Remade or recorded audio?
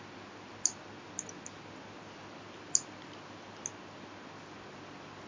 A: recorded